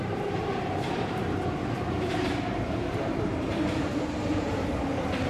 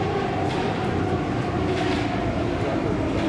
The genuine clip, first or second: second